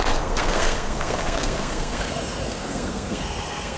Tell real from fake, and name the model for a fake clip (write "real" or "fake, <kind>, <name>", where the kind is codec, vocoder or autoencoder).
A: fake, codec, SNAC